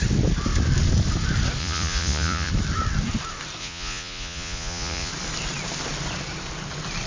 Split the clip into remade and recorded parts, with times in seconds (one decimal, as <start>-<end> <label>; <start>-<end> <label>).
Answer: 0.0-1.6 recorded; 1.6-2.5 remade; 2.5-3.6 recorded; 3.6-5.1 remade; 5.1-7.1 recorded